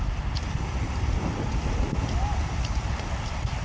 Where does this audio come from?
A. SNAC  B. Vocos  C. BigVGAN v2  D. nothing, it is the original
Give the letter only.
D